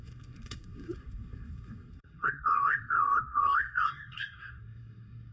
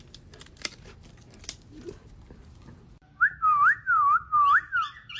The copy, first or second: first